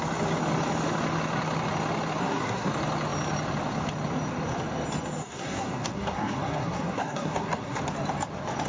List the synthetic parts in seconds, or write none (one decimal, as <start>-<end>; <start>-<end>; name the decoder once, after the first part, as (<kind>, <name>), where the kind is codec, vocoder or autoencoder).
2.2-2.7 (codec, SNAC); 5.2-7.8